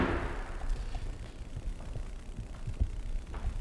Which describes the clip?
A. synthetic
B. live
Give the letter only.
B